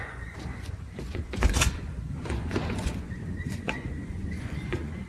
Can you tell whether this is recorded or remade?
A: remade